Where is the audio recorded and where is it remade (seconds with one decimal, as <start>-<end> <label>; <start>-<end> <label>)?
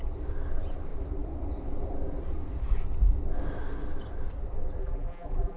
0.0-4.8 recorded; 4.8-5.6 remade